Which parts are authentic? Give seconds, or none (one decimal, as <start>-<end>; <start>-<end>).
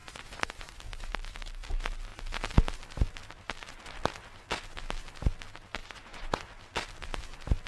0.8-5.8; 6.4-7.7